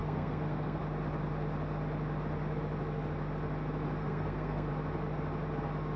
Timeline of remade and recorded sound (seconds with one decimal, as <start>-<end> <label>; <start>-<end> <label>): 0.0-0.8 remade; 0.8-4.0 recorded; 4.0-4.7 remade; 4.7-6.0 recorded